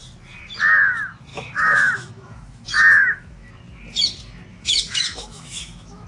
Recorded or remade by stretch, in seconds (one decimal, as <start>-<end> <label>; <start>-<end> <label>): 0.0-1.3 recorded; 1.3-3.5 remade; 3.5-4.5 recorded; 4.5-6.1 remade